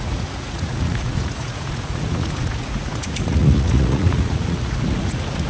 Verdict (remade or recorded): remade